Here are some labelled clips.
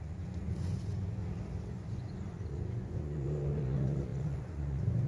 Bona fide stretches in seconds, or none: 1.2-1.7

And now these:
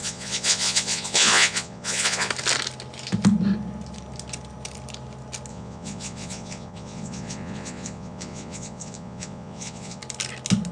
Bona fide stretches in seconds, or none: 2.3-5.5; 10.0-10.7

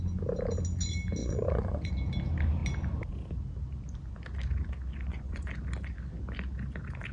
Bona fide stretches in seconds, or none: 0.0-1.2; 1.9-5.1; 5.6-7.1